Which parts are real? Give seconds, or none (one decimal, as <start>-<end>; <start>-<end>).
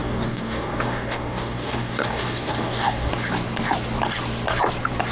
3.1-5.1